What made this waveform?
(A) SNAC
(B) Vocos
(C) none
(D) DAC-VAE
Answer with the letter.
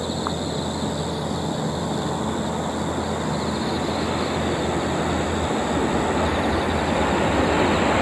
C